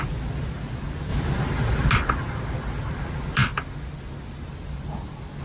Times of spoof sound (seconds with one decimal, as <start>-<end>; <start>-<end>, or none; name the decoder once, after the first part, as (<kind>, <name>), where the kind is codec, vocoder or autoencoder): none